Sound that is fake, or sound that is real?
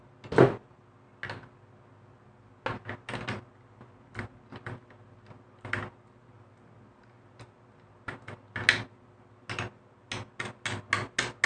real